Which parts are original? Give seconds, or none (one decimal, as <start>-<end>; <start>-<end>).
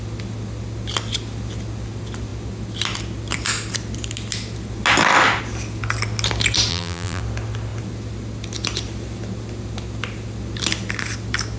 0.0-6.7; 7.2-11.6